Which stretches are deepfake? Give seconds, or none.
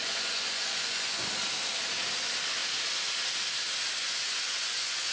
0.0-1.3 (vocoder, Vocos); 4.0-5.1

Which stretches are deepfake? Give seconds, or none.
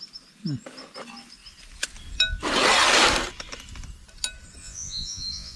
4.6-5.6 (vocoder, Vocos)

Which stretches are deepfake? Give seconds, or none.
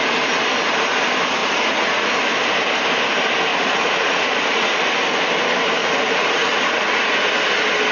1.4-2.1 (vocoder, Vocos); 3.5-4.8; 5.8-7.3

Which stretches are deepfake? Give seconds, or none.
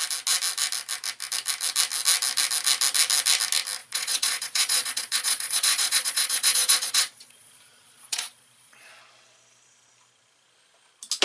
3.8-8.9 (vocoder, Vocos)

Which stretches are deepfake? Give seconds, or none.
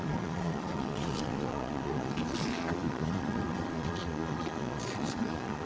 0.0-5.7 (vocoder, Vocos)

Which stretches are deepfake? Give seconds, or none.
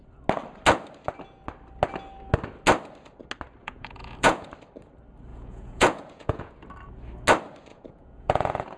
3.6-4.5 (vocoder, Vocos); 5.3-6.5; 7.7-8.8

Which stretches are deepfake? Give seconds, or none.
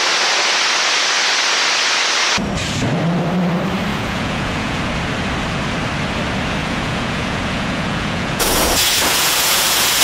3.9-4.9 (vocoder, Vocos); 6.6-10.0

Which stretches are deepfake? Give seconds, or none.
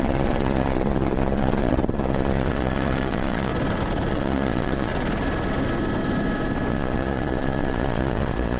0.0-3.5 (vocoder, Vocos); 4.1-4.9; 6.7-8.6